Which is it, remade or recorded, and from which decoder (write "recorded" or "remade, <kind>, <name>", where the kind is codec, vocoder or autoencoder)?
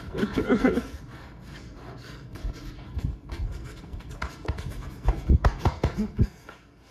remade, codec, SNAC